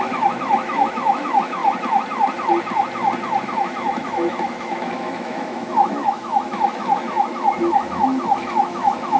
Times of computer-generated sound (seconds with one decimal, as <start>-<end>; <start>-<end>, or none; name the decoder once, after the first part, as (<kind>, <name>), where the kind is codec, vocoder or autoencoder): 0.0-1.6 (autoencoder, DAC-VAE); 3.4-9.2